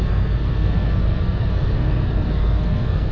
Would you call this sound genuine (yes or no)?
no